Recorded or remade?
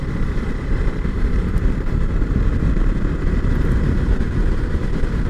remade